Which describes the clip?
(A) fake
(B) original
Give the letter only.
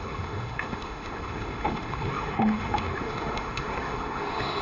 A